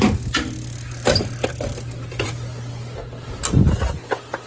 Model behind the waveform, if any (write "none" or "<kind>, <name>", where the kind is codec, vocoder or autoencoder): none